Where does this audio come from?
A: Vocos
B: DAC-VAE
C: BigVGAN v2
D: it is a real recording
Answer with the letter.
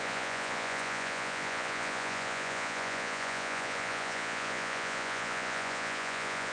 A